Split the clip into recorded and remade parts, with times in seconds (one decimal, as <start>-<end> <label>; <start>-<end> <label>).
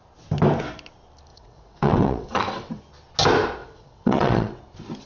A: 0.0-1.3 recorded; 1.3-2.8 remade; 2.8-3.6 recorded; 3.6-4.6 remade; 4.6-5.1 recorded